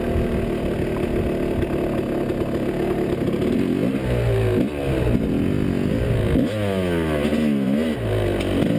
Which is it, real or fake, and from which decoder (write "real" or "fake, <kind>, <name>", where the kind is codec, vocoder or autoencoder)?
real